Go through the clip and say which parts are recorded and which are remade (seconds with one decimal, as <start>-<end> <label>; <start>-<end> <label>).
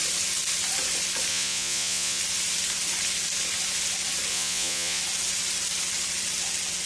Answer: 0.0-1.3 recorded; 1.3-2.2 remade; 2.2-4.3 recorded; 4.3-5.0 remade; 5.0-6.9 recorded